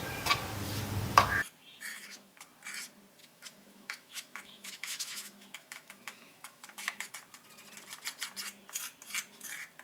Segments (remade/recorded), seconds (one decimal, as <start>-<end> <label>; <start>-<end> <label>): 0.0-1.9 recorded; 1.9-2.4 remade; 2.4-3.2 recorded; 3.2-7.1 remade; 7.1-9.8 recorded